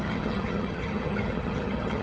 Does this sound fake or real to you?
fake